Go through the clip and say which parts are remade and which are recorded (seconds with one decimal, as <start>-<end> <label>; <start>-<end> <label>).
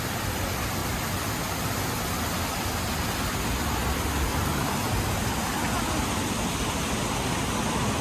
0.0-0.8 recorded; 0.8-1.9 remade; 1.9-4.3 recorded; 4.3-4.9 remade; 4.9-8.0 recorded